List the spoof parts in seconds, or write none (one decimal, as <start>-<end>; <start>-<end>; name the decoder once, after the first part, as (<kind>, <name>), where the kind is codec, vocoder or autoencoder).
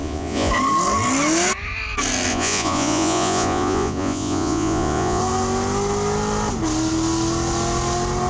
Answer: 0.0-0.5 (vocoder, Vocos); 2.3-5.2